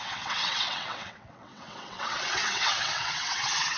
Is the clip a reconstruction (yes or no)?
yes